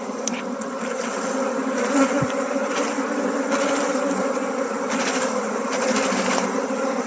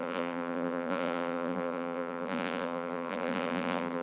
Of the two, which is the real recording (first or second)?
first